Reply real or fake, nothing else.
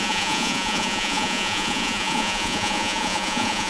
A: fake